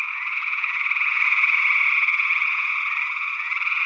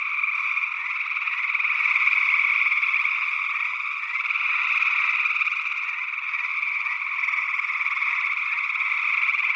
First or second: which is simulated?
first